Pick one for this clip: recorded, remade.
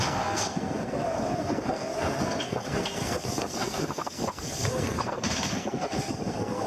remade